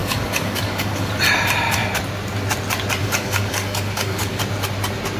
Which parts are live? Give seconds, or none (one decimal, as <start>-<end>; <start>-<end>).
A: 1.1-3.0; 4.4-5.2